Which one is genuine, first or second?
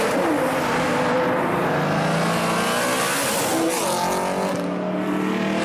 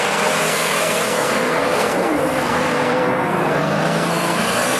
first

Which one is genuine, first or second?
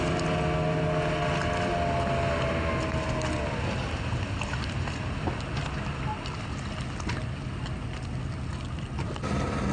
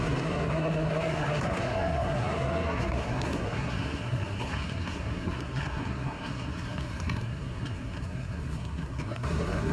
first